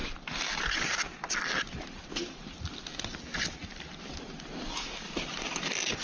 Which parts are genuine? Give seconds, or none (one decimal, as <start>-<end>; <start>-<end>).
0.0-6.0